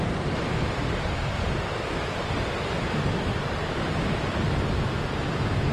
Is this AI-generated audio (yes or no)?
no